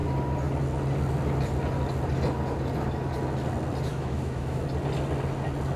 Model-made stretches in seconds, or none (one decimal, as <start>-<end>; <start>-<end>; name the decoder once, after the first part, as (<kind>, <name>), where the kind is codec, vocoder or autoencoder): 3.9-4.6 (autoencoder, DAC-VAE)

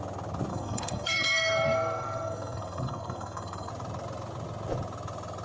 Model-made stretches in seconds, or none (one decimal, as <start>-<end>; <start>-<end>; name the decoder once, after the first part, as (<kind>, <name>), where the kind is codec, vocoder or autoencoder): 0.5-3.7 (codec, SNAC)

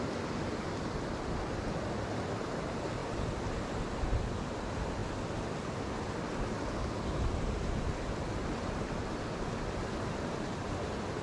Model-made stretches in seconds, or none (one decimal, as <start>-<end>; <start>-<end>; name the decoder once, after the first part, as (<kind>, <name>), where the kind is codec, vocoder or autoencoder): none

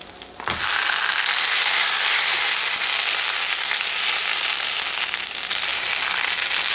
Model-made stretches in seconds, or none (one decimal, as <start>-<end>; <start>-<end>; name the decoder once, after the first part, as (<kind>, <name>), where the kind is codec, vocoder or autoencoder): none

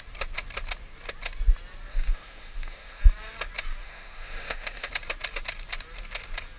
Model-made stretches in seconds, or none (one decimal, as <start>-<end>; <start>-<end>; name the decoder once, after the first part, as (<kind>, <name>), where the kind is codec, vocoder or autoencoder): 1.9-3.0 (autoencoder, DAC-VAE); 3.8-4.9

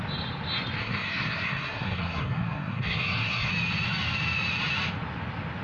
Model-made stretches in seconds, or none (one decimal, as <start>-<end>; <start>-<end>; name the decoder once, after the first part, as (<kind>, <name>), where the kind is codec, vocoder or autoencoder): 0.8-3.5 (codec, SNAC)